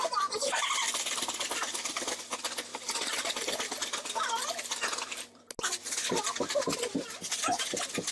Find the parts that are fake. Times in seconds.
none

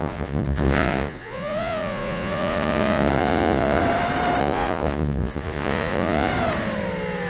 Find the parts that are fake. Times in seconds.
0.0-3.8 (vocoder, Vocos); 4.4-6.3

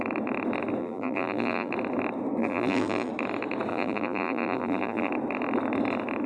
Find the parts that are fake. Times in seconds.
0.8-1.7 (vocoder, BigVGAN v2); 2.4-3.1; 3.7-5.1

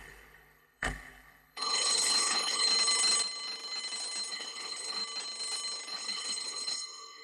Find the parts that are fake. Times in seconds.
0.0-2.7 (codec, HILCodec); 4.3-5.0; 5.9-7.2

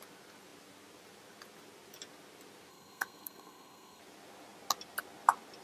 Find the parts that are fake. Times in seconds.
2.7-4.0 (codec, SNAC)